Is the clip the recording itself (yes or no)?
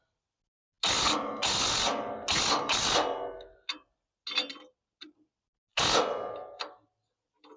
yes